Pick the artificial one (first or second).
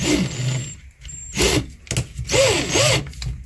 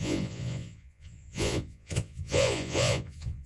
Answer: second